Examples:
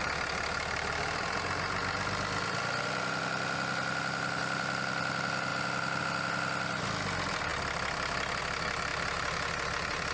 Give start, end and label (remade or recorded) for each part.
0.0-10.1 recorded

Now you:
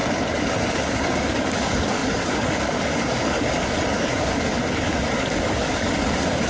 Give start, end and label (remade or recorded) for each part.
0.0-0.7 recorded; 0.7-6.5 remade

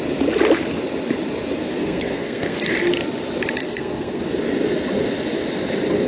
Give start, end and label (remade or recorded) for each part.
0.0-1.8 recorded; 1.8-2.7 remade; 2.7-3.6 recorded; 3.6-4.2 remade; 4.2-6.1 recorded

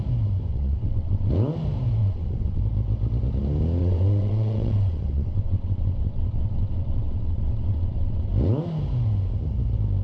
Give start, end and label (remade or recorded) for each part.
0.0-0.5 recorded; 0.5-1.3 remade; 1.3-2.0 recorded; 2.0-2.6 remade; 2.6-3.8 recorded; 3.8-8.3 remade; 8.3-10.0 recorded

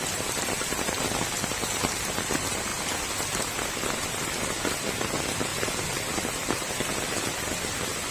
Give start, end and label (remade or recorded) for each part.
0.0-8.1 recorded